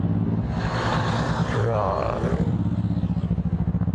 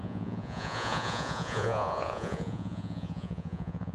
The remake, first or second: second